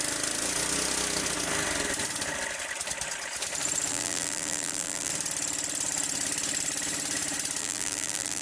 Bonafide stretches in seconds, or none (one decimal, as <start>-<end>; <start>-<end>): 0.0-3.9; 5.1-7.6